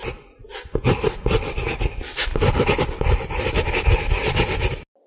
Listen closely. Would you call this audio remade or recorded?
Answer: recorded